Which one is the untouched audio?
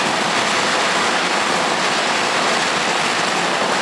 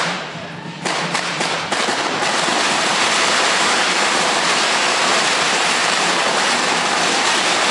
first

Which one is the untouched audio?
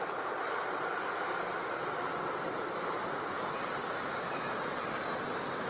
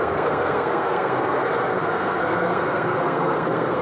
first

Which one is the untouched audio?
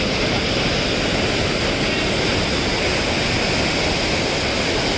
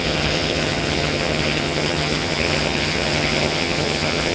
first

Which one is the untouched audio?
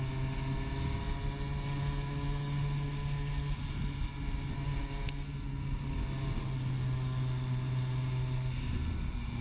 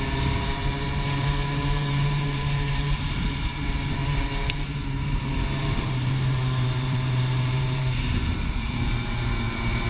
first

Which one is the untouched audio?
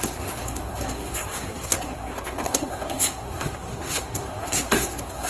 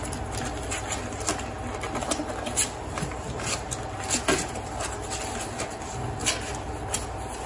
second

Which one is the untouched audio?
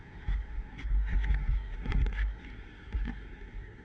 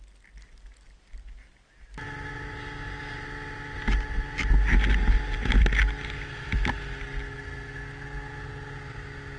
second